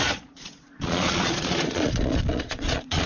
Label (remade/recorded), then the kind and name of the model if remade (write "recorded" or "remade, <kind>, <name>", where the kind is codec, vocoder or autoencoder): remade, vocoder, Vocos